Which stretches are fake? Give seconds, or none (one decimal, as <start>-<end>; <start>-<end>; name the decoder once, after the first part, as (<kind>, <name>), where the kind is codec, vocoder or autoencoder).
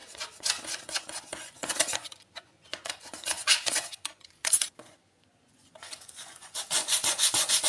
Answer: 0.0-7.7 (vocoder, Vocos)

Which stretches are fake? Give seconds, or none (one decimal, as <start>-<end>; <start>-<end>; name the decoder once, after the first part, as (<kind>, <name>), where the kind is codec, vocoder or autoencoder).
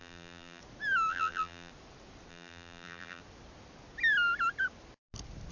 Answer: 0.0-0.6 (vocoder, BigVGAN v2); 1.1-1.7; 2.3-3.2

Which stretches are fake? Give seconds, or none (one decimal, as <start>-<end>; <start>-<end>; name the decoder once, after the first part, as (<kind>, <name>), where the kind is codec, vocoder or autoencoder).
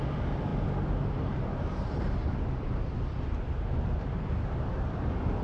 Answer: none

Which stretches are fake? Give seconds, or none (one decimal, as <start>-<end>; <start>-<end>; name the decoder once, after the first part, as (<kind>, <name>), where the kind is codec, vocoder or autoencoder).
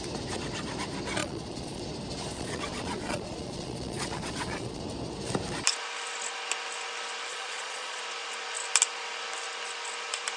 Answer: 1.2-1.8 (vocoder, Vocos); 2.3-4.8; 7.3-8.0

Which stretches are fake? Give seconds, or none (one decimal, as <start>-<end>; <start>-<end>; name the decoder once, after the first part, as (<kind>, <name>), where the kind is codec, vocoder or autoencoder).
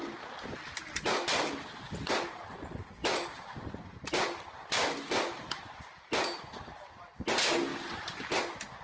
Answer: 0.0-2.1 (vocoder, BigVGAN v2); 3.0-7.2; 7.7-8.4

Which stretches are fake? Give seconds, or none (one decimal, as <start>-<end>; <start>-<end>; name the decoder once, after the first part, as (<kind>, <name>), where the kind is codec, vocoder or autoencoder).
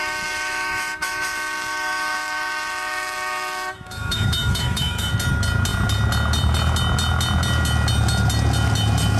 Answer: 0.0-5.1 (autoencoder, DAC-VAE)